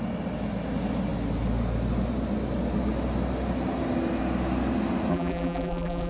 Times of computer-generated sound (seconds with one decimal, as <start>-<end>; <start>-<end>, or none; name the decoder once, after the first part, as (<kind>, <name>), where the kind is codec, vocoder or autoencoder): 5.1-6.1 (vocoder, BigVGAN v2)